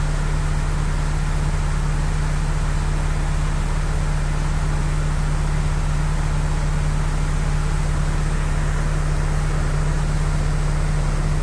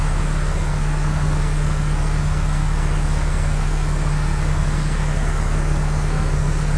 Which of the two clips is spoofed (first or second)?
second